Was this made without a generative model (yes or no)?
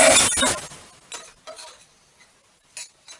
yes